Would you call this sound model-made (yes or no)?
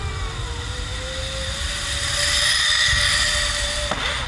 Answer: no